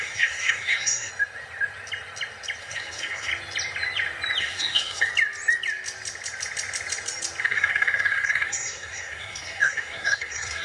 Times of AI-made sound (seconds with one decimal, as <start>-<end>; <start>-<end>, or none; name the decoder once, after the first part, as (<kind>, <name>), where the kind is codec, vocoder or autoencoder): 0.0-1.1 (codec, SNAC); 2.6-3.3; 4.4-5.1; 7.4-10.6